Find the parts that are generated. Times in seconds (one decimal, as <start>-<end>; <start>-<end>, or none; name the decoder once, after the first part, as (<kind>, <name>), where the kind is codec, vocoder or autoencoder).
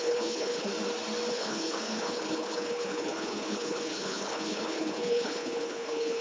0.0-0.7 (codec, HILCodec); 1.3-6.2